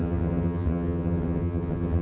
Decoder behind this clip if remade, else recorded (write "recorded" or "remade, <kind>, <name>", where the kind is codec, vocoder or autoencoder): remade, vocoder, HiFi-GAN